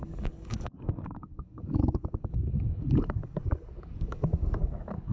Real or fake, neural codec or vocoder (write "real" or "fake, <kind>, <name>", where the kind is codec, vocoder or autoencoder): fake, codec, DAC